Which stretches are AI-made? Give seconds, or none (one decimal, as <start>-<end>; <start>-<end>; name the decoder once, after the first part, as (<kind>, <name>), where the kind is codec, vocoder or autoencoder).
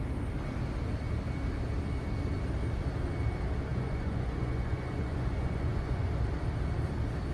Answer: 3.7-6.1 (vocoder, Vocos)